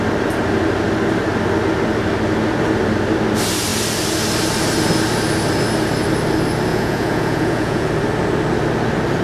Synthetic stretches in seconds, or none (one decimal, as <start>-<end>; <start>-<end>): 6.7-7.9